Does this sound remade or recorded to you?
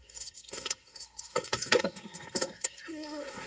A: remade